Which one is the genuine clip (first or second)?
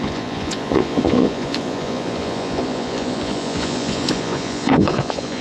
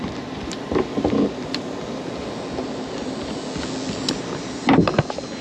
second